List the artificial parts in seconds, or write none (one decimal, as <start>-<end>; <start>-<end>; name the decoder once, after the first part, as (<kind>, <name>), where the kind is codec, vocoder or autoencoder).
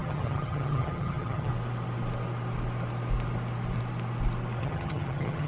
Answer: 0.0-1.5 (vocoder, HiFi-GAN); 4.6-5.5